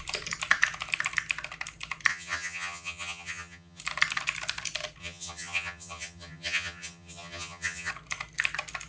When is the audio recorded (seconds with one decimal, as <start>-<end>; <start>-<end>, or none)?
0.0-2.1; 3.8-5.0; 7.9-8.9